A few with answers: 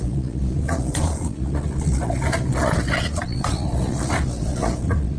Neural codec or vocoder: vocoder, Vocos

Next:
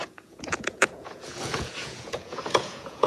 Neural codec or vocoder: vocoder, Vocos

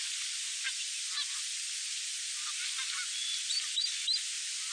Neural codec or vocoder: none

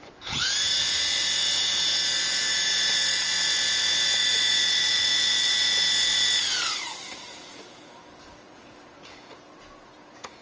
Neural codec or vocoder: vocoder, Vocos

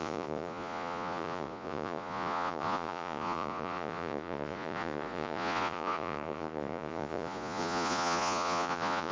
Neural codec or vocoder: vocoder, Vocos